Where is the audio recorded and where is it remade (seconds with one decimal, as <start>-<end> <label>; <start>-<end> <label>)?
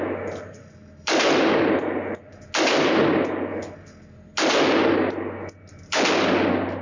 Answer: 0.0-6.8 recorded